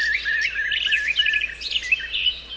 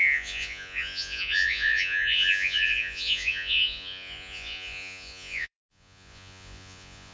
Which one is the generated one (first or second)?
second